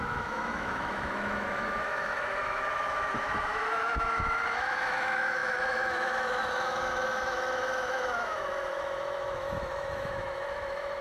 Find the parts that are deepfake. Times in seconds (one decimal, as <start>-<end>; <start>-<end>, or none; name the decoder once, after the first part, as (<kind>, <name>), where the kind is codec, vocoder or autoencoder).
0.0-11.0 (autoencoder, DAC-VAE)